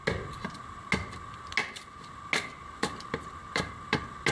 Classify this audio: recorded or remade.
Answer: recorded